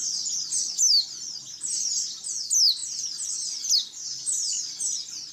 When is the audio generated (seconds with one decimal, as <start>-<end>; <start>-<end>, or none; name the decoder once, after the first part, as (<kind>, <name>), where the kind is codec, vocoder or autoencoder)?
none